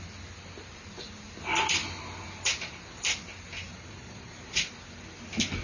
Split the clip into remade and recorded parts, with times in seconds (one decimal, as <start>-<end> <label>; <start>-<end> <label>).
0.0-3.7 recorded; 3.7-4.7 remade; 4.7-5.6 recorded

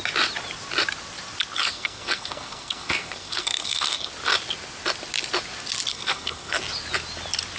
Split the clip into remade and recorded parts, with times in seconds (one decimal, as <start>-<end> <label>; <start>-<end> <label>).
0.0-1.6 recorded; 1.6-4.1 remade; 4.1-5.9 recorded; 5.9-6.6 remade; 6.6-7.6 recorded

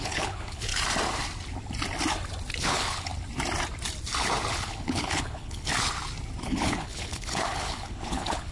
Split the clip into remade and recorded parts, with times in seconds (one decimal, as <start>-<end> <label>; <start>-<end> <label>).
0.0-0.7 remade; 0.7-2.6 recorded; 2.6-3.1 remade; 3.1-4.5 recorded; 4.5-5.7 remade; 5.7-6.4 recorded; 6.4-8.5 remade

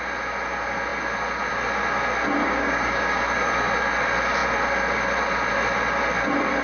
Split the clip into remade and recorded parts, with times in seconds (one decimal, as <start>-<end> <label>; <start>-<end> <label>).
0.0-2.4 recorded; 2.4-3.2 remade; 3.2-6.6 recorded